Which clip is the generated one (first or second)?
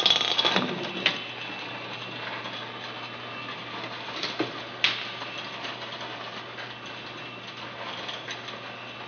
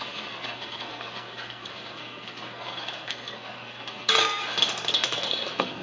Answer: second